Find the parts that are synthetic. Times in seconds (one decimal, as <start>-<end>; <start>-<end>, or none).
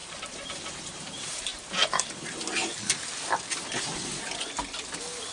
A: 0.0-2.6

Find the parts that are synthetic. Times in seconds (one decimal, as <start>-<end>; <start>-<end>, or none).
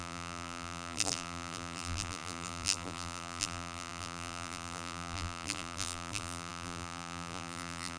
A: 0.0-8.0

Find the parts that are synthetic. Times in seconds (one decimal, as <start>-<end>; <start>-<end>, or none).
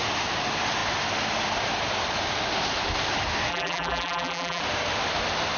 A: 3.5-4.6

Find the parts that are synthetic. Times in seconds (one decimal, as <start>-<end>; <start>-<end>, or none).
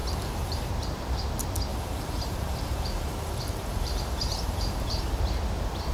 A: 0.0-0.7; 1.7-5.2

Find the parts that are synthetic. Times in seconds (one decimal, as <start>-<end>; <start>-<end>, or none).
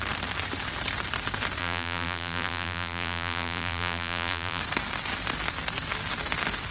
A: 1.6-4.6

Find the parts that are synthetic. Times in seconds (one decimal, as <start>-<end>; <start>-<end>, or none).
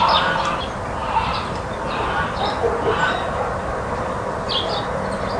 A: 1.0-1.7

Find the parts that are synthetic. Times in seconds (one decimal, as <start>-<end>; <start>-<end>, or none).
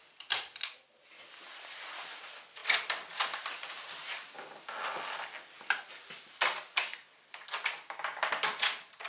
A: none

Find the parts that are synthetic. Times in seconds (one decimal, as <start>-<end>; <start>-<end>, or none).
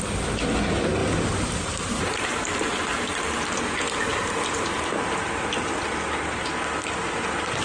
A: 1.0-3.1; 4.1-5.9